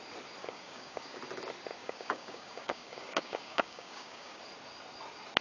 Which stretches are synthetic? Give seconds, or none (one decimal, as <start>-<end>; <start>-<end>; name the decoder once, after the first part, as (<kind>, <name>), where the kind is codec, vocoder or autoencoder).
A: 0.4-1.2 (codec, DAC); 1.8-4.4